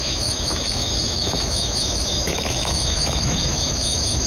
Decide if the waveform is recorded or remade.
remade